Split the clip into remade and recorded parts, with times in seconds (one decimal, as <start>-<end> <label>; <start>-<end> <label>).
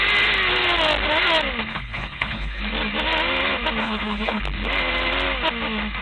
0.0-1.7 recorded; 1.7-2.6 remade; 2.6-3.8 recorded; 3.8-4.4 remade; 4.4-6.0 recorded